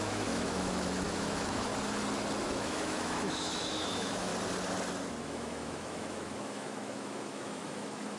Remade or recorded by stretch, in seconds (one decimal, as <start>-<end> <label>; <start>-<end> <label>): 0.0-1.7 remade; 1.7-2.4 recorded; 2.4-4.3 remade; 4.3-5.2 recorded; 5.2-8.2 remade

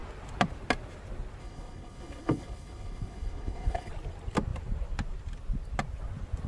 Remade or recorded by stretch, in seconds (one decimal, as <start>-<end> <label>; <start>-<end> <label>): 0.0-1.4 recorded; 1.4-3.9 remade; 3.9-6.5 recorded